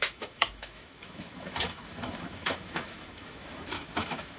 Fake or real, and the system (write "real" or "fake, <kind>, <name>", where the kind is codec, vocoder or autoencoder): fake, autoencoder, DAC-VAE